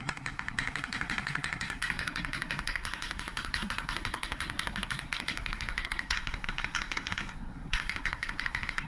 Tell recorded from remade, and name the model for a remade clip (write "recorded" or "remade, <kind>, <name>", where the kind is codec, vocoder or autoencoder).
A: remade, codec, SNAC